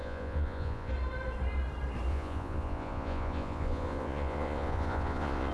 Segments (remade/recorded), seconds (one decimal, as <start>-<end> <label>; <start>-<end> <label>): 0.0-0.9 remade; 0.9-2.1 recorded; 2.1-5.5 remade